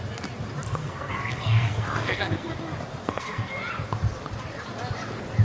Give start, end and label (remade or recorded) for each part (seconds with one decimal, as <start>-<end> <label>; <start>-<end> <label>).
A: 0.0-0.8 recorded; 0.8-2.5 remade; 2.5-3.0 recorded; 3.0-3.5 remade; 3.5-5.4 recorded